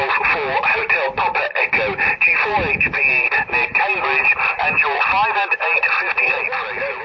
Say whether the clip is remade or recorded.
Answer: recorded